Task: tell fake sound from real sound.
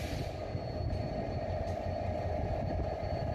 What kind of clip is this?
real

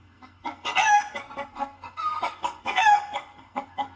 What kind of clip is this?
fake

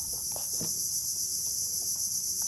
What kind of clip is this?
real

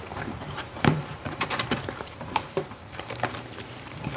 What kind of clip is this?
fake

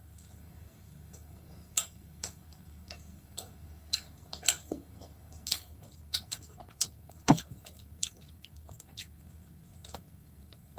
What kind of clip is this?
fake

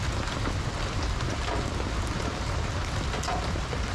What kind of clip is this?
real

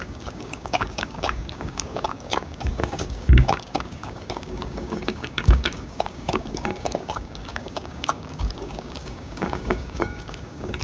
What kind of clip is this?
fake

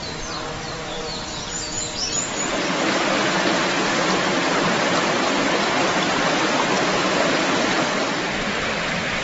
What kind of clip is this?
real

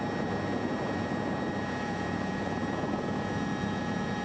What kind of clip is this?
fake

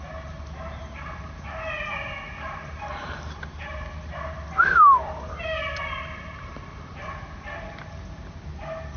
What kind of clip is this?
real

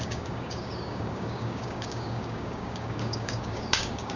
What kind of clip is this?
fake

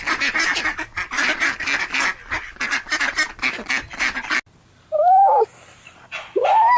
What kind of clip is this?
real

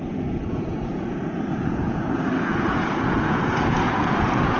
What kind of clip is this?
fake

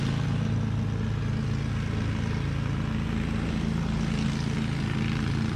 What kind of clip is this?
real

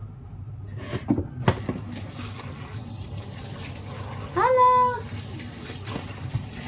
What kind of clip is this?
real